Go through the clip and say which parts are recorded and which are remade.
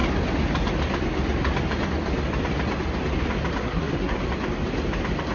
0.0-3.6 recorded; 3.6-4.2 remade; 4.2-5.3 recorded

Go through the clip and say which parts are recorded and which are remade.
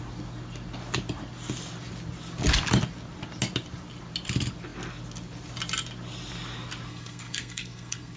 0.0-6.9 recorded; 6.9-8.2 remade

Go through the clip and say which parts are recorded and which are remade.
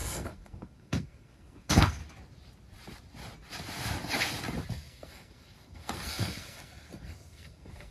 0.0-2.0 remade; 2.0-4.7 recorded; 4.7-7.9 remade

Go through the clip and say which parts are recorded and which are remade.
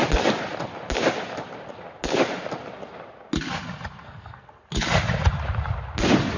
0.0-4.0 recorded; 4.0-4.5 remade; 4.5-6.4 recorded